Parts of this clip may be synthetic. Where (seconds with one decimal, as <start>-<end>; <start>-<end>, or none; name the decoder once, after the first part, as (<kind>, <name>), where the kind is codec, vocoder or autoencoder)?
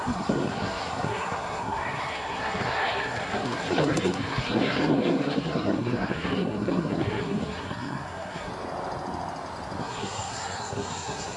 0.0-8.5 (codec, SNAC); 9.8-11.4